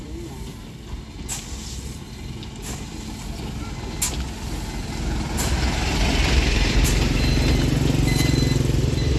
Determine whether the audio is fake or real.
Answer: real